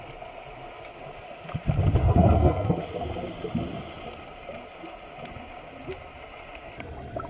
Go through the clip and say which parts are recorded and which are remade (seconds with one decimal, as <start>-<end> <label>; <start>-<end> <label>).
0.0-2.0 recorded; 2.0-2.8 remade; 2.8-7.3 recorded